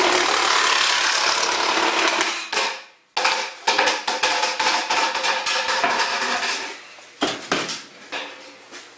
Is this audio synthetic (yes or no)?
no